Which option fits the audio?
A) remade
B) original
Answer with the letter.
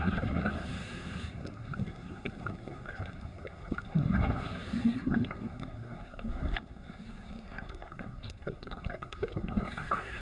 A